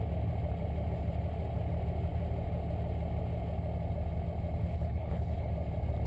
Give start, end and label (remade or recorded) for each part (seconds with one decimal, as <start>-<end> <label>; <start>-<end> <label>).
0.0-4.6 recorded; 4.6-5.5 remade; 5.5-6.1 recorded